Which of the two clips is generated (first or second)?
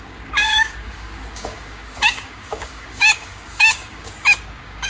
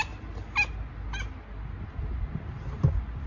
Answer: first